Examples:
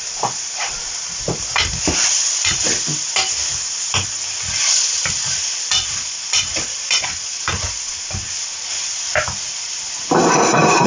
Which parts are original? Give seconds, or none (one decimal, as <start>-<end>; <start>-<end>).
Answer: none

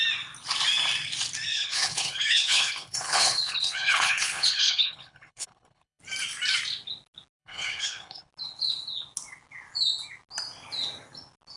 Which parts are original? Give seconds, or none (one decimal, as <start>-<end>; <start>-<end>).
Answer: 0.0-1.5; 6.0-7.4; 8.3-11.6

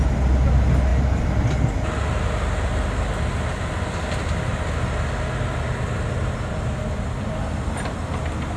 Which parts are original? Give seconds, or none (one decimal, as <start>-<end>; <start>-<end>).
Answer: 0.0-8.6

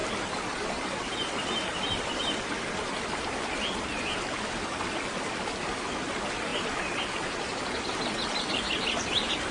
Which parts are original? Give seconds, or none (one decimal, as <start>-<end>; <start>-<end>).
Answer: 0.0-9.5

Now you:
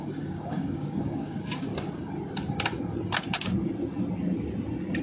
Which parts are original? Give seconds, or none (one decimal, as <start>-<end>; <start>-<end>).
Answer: 1.7-5.0